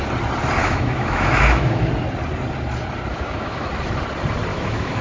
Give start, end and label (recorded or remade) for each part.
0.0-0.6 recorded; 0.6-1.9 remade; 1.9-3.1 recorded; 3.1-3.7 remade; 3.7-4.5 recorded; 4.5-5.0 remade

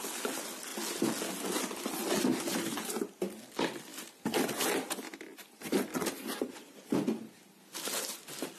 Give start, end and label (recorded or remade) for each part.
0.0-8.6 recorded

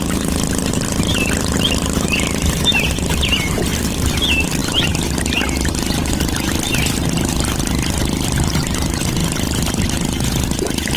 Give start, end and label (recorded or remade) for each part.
0.0-11.0 recorded

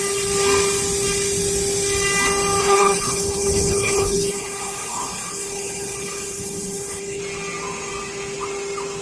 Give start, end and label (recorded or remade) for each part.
0.0-2.6 recorded; 2.6-7.2 remade; 7.2-9.0 recorded

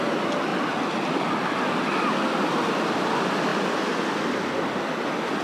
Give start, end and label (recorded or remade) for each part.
0.0-5.4 recorded

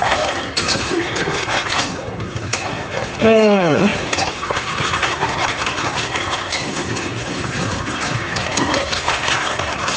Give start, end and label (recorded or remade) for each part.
0.0-10.0 remade

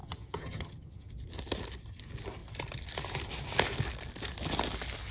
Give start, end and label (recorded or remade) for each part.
0.0-1.1 remade; 1.1-5.1 recorded